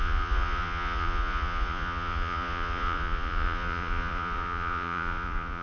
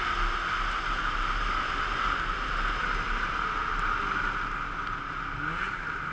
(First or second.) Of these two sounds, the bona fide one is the second